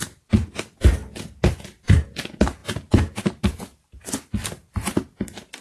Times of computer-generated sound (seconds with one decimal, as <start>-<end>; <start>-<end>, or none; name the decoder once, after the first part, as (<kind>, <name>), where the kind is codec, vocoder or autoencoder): 2.6-3.9 (vocoder, BigVGAN v2)